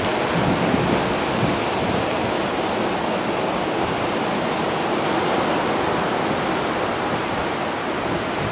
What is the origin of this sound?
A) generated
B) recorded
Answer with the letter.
B